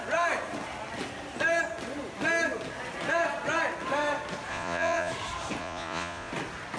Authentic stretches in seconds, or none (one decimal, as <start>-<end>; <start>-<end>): 0.0-4.5; 5.1-5.6; 6.3-6.8